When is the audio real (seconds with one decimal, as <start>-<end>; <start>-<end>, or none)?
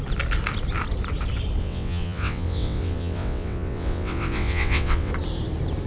0.0-1.6; 5.1-5.9